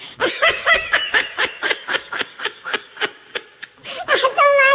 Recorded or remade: remade